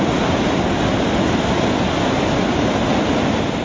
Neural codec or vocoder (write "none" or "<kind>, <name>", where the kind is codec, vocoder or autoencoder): vocoder, BigVGAN v2